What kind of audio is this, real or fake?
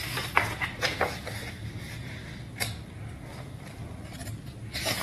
real